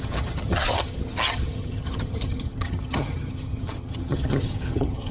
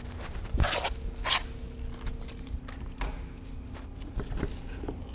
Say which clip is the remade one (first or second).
first